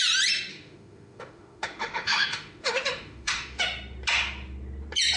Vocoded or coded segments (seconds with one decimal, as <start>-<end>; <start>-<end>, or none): 0.5-3.6